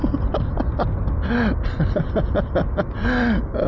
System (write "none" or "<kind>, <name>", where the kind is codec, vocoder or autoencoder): none